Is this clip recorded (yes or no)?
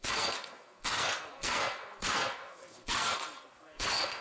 no